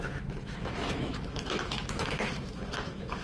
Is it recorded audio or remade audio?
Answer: remade